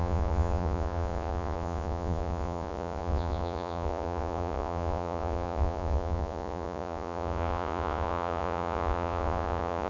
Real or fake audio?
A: fake